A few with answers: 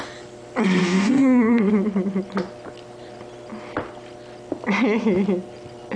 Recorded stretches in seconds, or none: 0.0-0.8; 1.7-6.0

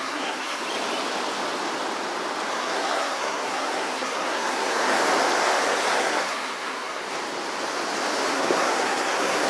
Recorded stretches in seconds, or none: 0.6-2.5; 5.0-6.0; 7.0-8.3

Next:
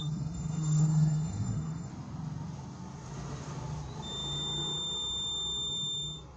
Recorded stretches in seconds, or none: 1.9-6.4